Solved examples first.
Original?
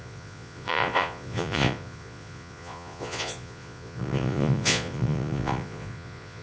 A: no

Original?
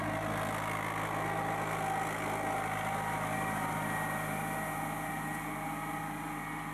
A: yes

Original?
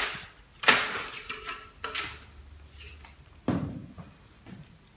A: yes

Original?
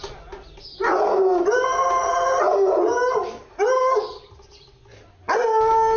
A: yes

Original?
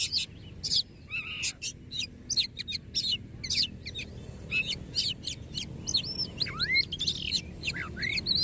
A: yes